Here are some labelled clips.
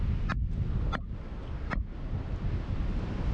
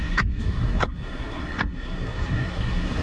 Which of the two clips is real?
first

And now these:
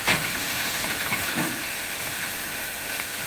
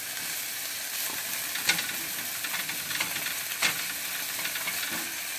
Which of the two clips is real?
second